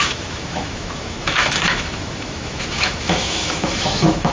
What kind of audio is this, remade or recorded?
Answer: remade